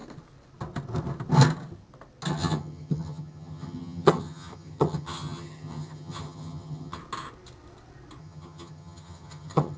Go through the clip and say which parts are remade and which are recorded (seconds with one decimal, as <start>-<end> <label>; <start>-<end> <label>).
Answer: 0.0-2.3 recorded; 2.3-7.0 remade; 7.0-8.2 recorded; 8.2-9.8 remade